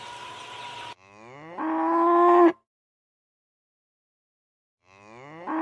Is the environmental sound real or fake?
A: real